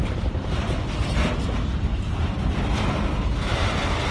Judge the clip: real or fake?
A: real